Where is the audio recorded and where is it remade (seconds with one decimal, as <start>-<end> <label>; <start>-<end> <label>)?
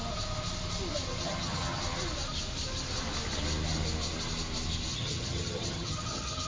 0.0-1.2 recorded; 1.2-1.8 remade; 1.8-4.9 recorded; 4.9-6.5 remade